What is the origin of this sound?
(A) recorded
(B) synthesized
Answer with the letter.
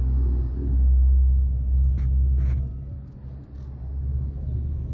A